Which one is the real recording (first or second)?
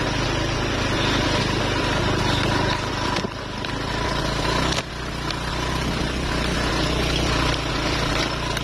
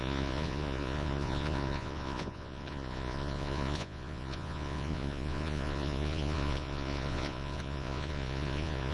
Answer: first